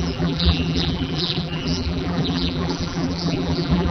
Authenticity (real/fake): fake